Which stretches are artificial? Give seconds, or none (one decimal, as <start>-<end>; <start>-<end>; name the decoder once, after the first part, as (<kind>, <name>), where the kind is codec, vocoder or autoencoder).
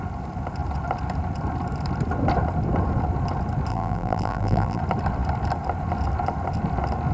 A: 3.7-4.8 (vocoder, BigVGAN v2)